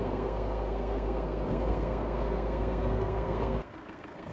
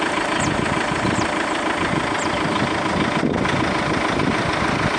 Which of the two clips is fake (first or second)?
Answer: first